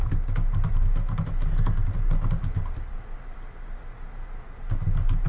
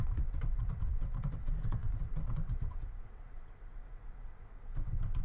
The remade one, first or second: second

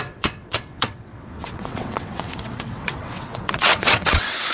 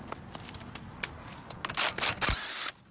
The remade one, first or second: first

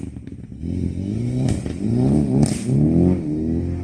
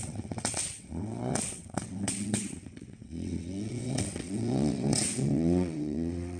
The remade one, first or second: second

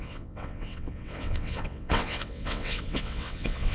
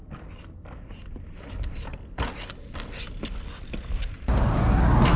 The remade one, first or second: first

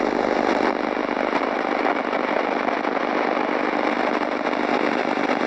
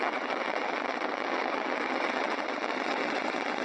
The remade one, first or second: second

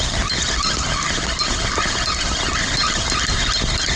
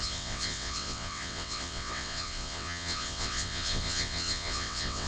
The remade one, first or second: second